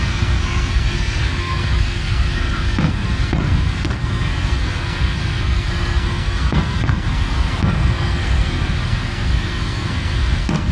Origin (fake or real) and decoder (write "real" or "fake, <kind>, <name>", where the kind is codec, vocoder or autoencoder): fake, codec, SNAC